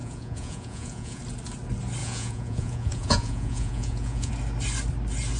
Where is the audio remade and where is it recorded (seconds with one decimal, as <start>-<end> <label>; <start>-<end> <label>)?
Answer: 0.0-1.2 remade; 1.2-2.0 recorded; 2.0-4.3 remade; 4.3-5.4 recorded